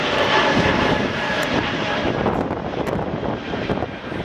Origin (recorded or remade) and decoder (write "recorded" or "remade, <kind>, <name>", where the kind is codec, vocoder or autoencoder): recorded